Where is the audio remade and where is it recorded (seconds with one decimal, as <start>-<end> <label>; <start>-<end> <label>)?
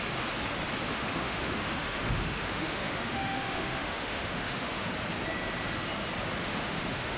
0.0-0.9 recorded; 0.9-4.9 remade; 4.9-6.4 recorded; 6.4-7.2 remade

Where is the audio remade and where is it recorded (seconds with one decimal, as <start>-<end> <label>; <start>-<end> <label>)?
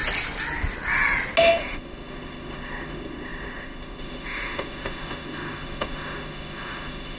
0.0-1.4 recorded; 1.4-7.2 remade